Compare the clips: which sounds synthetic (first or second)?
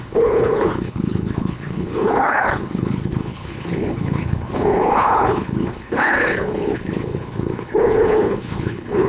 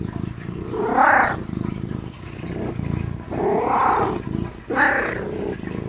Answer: first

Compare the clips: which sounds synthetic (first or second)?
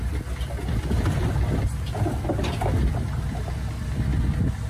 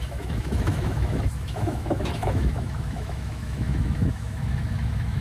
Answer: second